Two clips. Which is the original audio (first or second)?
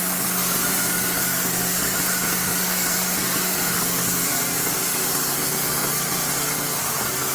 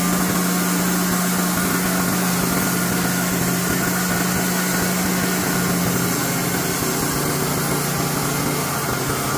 second